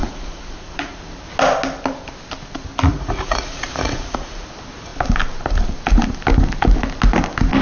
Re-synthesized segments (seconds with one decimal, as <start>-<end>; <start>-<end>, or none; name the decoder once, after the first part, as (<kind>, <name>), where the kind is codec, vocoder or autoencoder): 0.0-1.0 (vocoder, Vocos); 2.9-4.5